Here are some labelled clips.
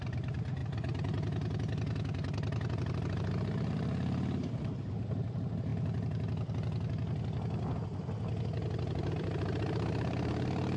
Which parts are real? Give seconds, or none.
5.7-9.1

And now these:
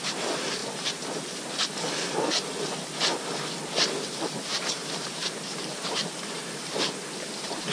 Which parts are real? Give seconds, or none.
0.0-0.6; 1.2-4.5

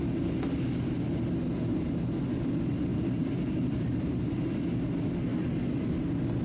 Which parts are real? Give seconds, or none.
0.0-2.9; 4.2-6.4

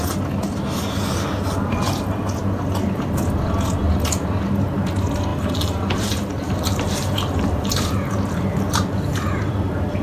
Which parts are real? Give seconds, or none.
0.0-5.3; 9.5-10.0

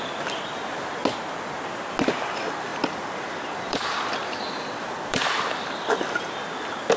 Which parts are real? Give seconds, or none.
0.0-2.7; 6.3-7.0

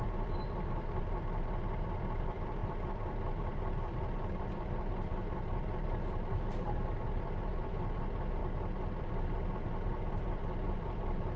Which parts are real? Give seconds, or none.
8.4-9.0

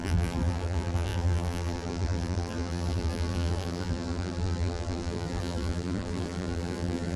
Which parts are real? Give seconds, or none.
none